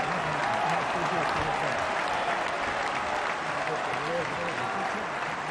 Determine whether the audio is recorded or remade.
recorded